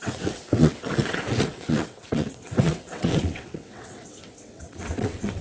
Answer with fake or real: fake